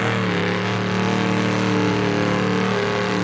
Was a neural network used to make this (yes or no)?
no